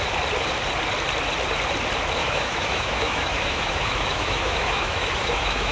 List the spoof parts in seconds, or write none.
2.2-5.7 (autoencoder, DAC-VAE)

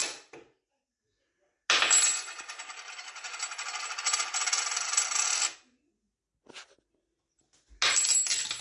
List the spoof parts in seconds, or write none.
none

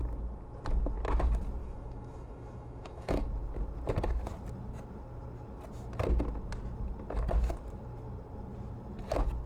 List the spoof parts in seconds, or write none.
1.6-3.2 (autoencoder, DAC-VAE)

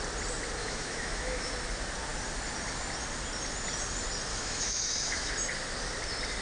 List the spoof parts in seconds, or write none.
0.6-1.5 (autoencoder, DAC-VAE); 4.3-5.3

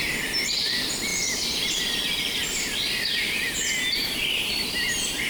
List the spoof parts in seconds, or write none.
none

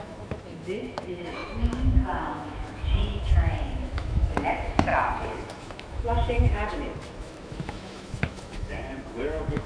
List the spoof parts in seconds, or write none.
0.0-9.7 (autoencoder, DAC-VAE)